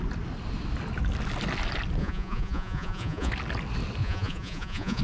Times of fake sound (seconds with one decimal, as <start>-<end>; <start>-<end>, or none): 2.0-3.3; 4.0-5.0